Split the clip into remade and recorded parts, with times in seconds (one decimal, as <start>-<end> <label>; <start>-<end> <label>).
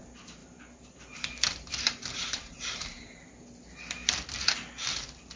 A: 0.0-0.4 recorded; 0.4-3.3 remade; 3.3-5.4 recorded